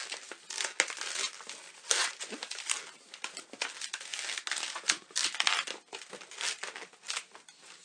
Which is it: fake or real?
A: real